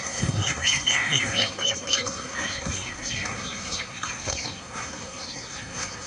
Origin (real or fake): fake